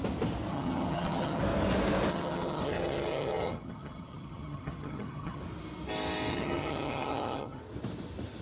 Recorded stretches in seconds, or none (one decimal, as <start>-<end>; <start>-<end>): 0.0-0.5; 1.4-2.1; 5.4-6.3; 7.6-8.4